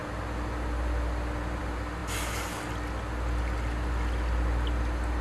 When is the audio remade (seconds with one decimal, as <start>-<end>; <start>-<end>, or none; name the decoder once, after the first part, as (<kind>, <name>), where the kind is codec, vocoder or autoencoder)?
none